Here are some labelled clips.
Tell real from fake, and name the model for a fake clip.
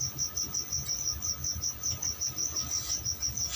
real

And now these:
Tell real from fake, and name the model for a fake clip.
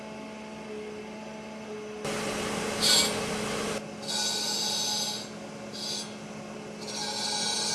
real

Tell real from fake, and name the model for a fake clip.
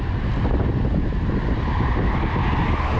real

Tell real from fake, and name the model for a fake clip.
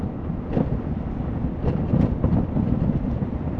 real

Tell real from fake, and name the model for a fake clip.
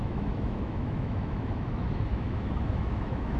fake, autoencoder, DAC-VAE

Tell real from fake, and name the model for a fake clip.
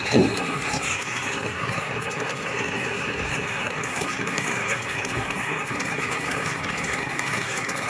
fake, codec, SNAC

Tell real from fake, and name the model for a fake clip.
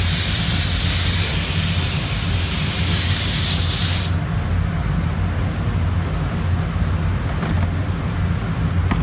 real